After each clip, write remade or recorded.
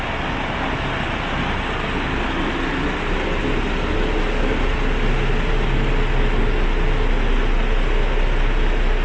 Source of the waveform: recorded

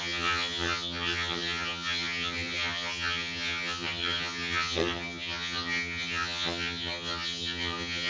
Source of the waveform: remade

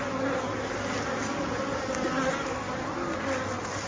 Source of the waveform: recorded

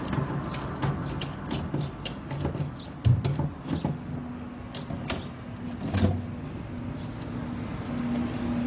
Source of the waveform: recorded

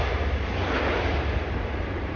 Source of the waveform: recorded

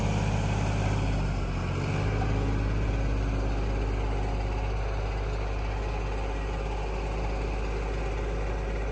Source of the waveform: recorded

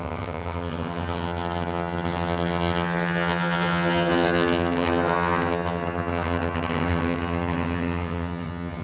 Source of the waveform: remade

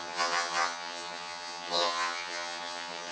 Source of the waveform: remade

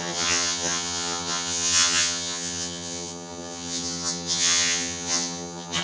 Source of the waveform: remade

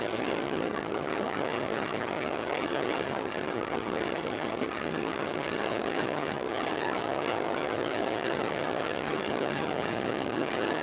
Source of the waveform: remade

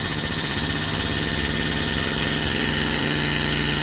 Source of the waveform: remade